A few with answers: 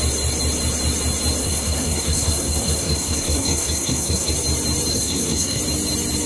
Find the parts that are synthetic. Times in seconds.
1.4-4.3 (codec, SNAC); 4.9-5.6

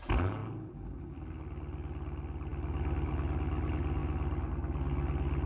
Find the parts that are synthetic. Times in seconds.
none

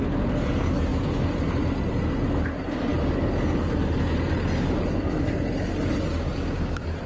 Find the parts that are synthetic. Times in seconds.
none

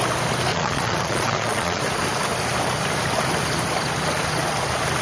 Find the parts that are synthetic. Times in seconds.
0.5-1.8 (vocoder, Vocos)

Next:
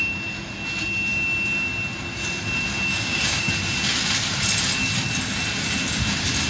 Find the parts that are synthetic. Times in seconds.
2.9-3.5 (codec, DAC)

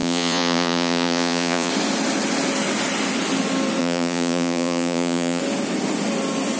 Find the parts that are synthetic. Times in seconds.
0.0-1.7 (vocoder, Vocos); 3.8-5.4